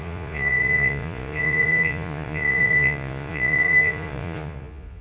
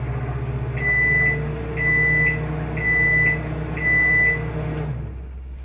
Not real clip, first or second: first